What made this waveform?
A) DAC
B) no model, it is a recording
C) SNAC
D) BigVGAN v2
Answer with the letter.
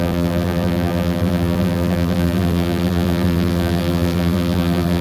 D